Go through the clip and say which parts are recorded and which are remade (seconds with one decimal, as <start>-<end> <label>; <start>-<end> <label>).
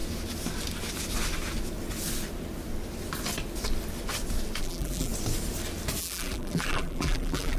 0.0-4.6 recorded; 4.6-5.1 remade; 5.1-6.0 recorded; 6.0-7.6 remade